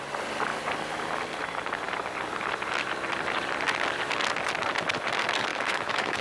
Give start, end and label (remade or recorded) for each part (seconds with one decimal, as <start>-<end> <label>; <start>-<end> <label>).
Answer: 0.0-5.5 recorded; 5.5-6.2 remade